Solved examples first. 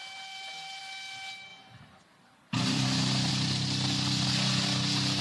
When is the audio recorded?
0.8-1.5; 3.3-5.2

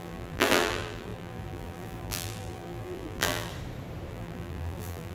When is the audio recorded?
3.5-4.1

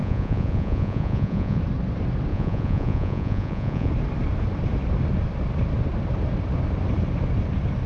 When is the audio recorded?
1.6-2.3; 3.9-7.9

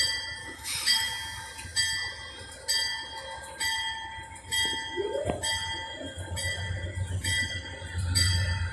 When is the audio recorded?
0.0-0.4; 1.1-8.7

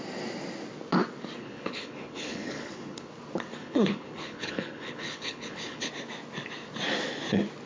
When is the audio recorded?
0.0-1.4; 3.1-3.6; 5.9-7.7

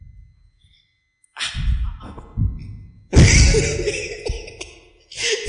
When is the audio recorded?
0.0-5.5

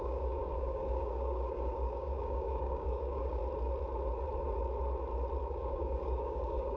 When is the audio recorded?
3.4-5.4

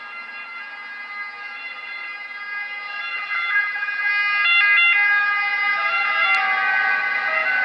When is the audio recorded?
0.0-3.1; 4.1-7.6